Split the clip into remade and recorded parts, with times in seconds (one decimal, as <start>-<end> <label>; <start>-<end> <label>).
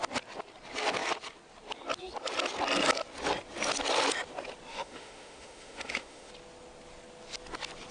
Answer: 0.0-4.7 recorded; 4.7-6.3 remade; 6.3-7.9 recorded